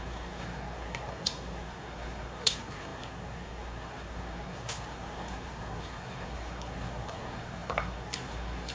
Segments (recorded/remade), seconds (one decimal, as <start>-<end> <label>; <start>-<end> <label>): 0.0-8.7 remade